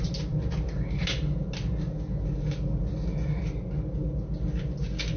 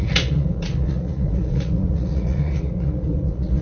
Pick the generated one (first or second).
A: second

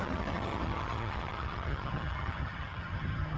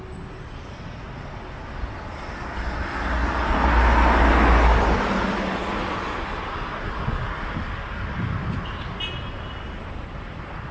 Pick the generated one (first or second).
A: first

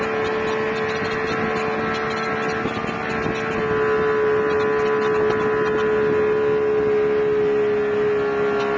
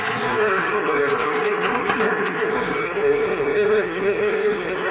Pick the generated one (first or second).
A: second